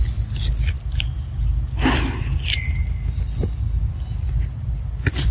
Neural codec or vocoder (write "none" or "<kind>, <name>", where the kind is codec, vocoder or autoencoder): none